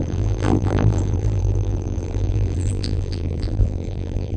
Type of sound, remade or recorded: remade